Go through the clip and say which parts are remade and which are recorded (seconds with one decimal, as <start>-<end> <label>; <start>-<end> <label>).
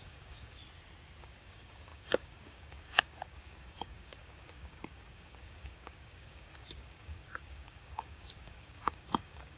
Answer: 0.0-0.6 remade; 0.6-1.2 recorded; 1.2-9.6 remade